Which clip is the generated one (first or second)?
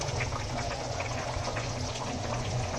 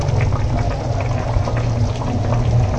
first